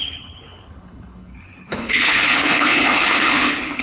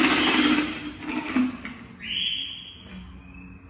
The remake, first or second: first